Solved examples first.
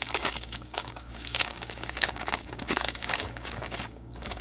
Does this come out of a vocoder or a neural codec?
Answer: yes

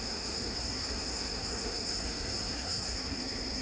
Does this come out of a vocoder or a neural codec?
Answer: yes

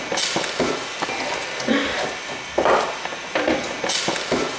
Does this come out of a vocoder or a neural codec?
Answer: no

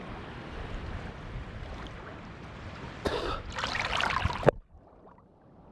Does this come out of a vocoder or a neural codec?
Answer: yes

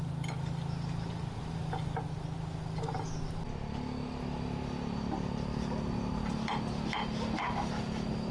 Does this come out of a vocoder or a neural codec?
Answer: no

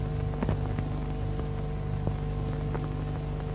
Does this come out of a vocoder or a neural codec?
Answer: no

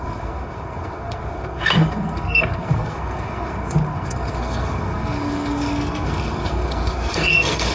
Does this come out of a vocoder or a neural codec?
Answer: yes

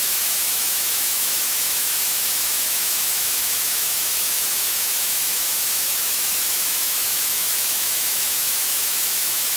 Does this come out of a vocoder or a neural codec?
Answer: yes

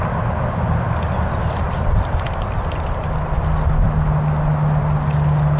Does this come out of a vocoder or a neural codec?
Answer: no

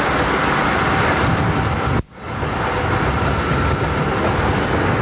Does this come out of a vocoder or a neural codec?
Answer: no